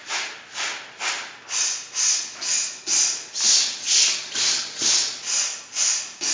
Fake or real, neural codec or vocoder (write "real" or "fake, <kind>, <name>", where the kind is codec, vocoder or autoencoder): real